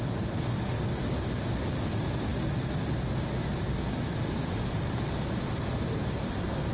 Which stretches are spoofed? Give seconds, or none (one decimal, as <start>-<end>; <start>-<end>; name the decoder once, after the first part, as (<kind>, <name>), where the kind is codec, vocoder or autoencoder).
none